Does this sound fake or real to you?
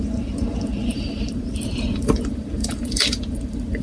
fake